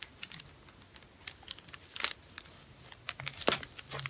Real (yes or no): yes